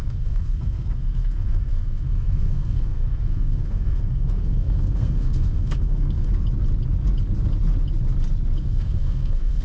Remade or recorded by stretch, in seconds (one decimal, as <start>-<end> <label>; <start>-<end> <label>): 0.0-6.3 remade; 6.3-8.6 recorded; 8.6-9.6 remade